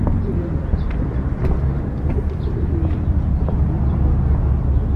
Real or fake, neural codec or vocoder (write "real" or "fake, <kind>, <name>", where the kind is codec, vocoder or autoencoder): real